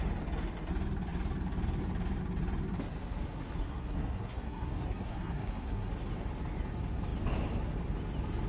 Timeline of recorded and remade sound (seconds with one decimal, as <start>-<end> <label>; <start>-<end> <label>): 0.0-3.6 recorded; 3.6-5.9 remade; 5.9-8.5 recorded